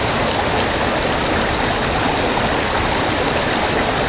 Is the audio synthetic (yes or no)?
no